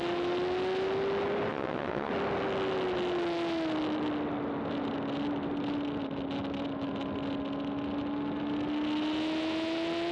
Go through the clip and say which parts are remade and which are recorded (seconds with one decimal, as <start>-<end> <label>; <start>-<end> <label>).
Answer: 0.0-1.5 recorded; 1.5-2.1 remade; 2.1-10.1 recorded